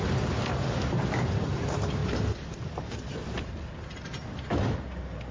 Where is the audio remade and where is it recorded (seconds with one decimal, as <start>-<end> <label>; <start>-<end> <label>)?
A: 0.0-5.3 remade